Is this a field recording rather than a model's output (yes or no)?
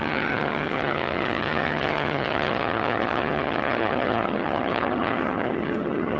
no